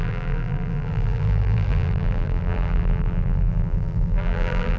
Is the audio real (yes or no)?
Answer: no